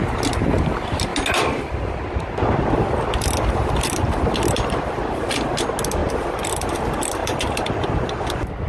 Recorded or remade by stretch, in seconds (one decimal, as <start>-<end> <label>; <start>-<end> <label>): 0.0-6.0 recorded; 6.0-6.7 remade; 6.7-7.2 recorded; 7.2-7.9 remade; 7.9-8.7 recorded